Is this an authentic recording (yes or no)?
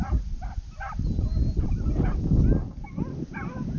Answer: yes